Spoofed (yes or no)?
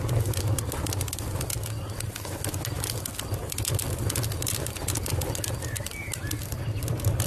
no